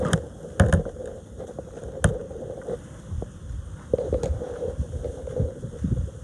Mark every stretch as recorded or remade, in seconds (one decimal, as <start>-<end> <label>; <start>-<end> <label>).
0.0-6.2 recorded